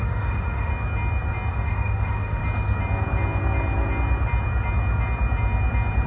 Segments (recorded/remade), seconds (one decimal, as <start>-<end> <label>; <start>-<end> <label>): 0.0-0.7 remade; 0.7-1.5 recorded; 1.5-2.4 remade; 2.4-6.1 recorded

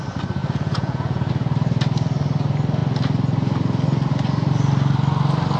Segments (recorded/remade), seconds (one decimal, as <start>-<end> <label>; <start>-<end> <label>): 0.0-0.4 recorded; 0.4-1.3 remade; 1.3-5.6 recorded

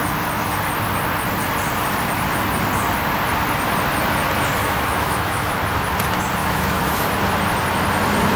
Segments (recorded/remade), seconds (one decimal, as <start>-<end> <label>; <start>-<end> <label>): 0.0-4.6 recorded; 4.6-5.5 remade; 5.5-6.4 recorded; 6.4-7.1 remade; 7.1-8.4 recorded